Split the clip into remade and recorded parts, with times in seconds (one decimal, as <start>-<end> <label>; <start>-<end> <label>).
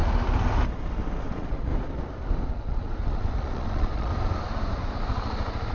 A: 0.0-1.2 recorded; 1.2-1.7 remade; 1.7-2.5 recorded; 2.5-4.1 remade; 4.1-5.7 recorded